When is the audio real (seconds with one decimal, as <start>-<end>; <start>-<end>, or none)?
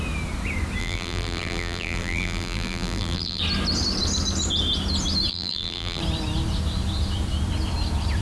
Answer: 0.0-0.8; 3.4-5.3; 6.0-8.2